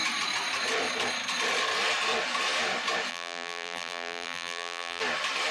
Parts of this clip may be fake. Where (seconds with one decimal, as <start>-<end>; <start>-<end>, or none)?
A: 3.1-5.0